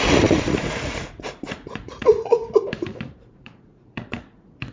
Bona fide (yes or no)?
no